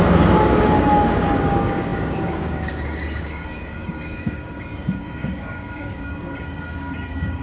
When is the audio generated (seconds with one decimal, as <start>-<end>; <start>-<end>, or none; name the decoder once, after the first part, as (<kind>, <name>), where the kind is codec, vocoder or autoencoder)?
0.0-7.4 (codec, DAC)

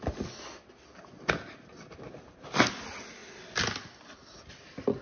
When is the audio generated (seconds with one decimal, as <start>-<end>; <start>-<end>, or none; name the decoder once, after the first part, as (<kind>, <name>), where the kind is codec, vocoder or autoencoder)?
none